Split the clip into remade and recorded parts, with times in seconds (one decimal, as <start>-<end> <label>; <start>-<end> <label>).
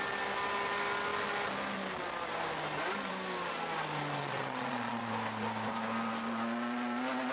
0.0-4.2 recorded; 4.2-5.1 remade; 5.1-7.3 recorded